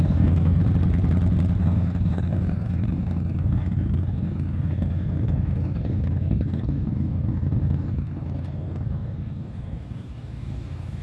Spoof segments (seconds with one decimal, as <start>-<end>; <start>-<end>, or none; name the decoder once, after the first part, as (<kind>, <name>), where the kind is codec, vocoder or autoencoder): 0.0-0.6 (codec, DAC); 1.6-11.0